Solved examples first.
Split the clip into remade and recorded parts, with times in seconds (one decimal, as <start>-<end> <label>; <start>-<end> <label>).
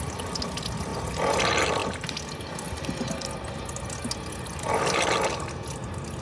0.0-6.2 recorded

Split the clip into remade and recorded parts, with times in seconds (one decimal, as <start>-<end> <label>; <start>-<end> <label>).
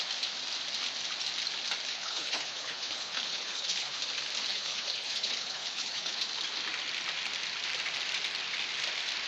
0.0-1.9 recorded; 1.9-4.0 remade; 4.0-4.5 recorded; 4.5-6.2 remade; 6.2-9.3 recorded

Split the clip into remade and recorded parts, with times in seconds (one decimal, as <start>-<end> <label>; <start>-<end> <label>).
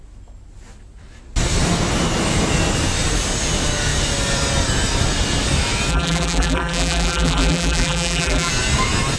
0.0-5.9 recorded; 5.9-8.5 remade; 8.5-9.2 recorded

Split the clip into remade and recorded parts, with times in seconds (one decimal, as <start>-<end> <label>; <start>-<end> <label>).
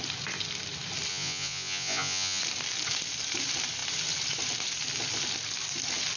0.0-1.1 recorded; 1.1-2.4 remade; 2.4-6.2 recorded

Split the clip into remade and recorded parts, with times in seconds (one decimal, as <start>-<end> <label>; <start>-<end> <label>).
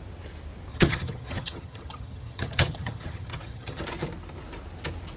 0.0-0.7 recorded; 0.7-3.8 remade; 3.8-5.2 recorded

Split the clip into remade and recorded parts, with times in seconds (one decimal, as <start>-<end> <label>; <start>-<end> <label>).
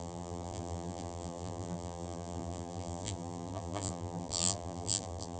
0.0-5.4 remade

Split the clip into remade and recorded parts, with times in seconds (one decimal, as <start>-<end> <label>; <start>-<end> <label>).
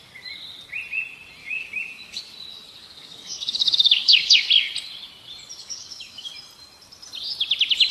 0.0-1.4 recorded; 1.4-2.2 remade; 2.2-2.8 recorded; 2.8-4.5 remade; 4.5-5.6 recorded; 5.6-6.3 remade; 6.3-7.9 recorded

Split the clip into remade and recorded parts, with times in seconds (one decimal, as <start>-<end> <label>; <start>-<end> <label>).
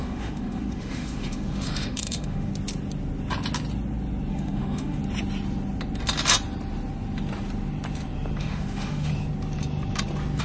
0.0-2.5 remade; 2.5-4.3 recorded; 4.3-5.0 remade; 5.0-8.4 recorded; 8.4-9.1 remade; 9.1-10.4 recorded